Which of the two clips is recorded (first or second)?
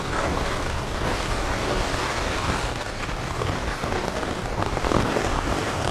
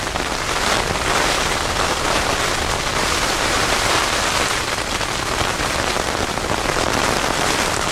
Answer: second